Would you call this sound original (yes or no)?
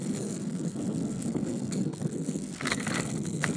no